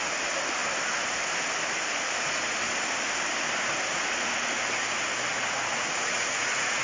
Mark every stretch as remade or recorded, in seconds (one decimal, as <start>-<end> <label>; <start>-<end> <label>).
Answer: 0.0-5.3 recorded; 5.3-6.8 remade